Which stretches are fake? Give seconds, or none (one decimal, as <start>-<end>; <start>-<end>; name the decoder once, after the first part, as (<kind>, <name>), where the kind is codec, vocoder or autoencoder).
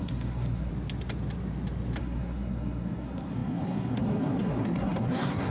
0.0-0.7 (codec, SNAC); 2.0-5.5